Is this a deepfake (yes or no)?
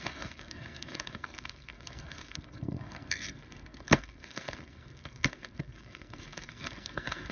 yes